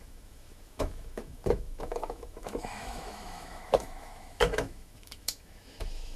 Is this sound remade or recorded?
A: remade